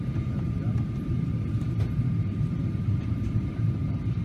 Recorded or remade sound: remade